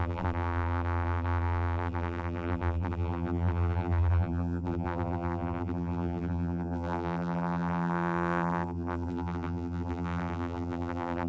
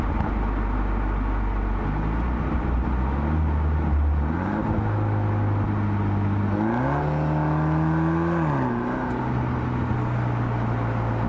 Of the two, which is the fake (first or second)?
first